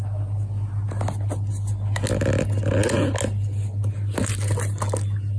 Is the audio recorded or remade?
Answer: recorded